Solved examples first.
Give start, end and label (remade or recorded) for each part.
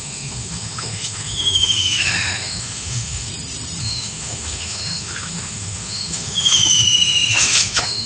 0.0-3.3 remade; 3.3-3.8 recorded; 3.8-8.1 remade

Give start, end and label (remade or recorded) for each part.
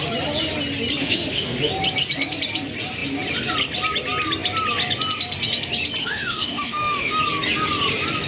0.0-1.0 recorded; 1.0-1.7 remade; 1.7-6.0 recorded; 6.0-7.2 remade; 7.2-8.3 recorded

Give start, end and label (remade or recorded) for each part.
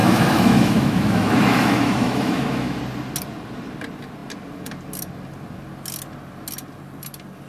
0.0-2.8 remade; 2.8-7.5 recorded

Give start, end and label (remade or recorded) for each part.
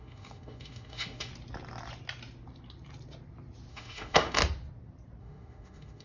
0.0-1.3 remade; 1.3-3.7 recorded; 3.7-4.4 remade; 4.4-5.2 recorded; 5.2-6.0 remade